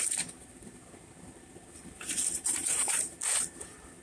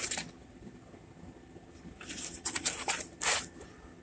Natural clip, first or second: second